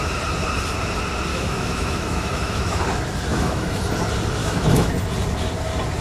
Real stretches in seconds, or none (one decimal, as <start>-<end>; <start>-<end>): 0.0-1.3; 2.8-3.3; 3.8-4.4; 4.9-6.0